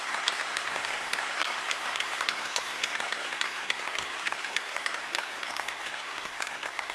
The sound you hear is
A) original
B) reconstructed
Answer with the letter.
B